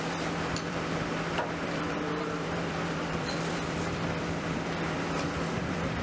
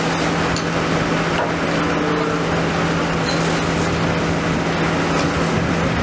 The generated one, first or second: first